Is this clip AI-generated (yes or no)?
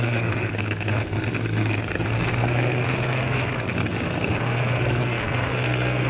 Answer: yes